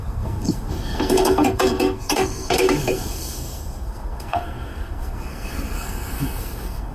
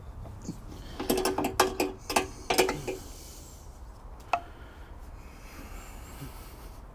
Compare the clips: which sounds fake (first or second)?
first